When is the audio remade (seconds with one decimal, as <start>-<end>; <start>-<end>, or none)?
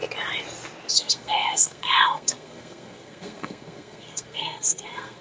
0.9-5.2